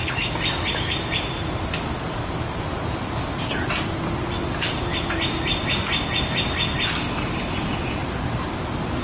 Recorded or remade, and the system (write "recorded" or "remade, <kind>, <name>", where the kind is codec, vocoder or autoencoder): recorded